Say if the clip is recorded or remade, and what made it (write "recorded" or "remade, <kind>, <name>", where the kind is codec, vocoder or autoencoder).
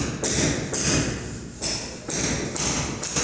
recorded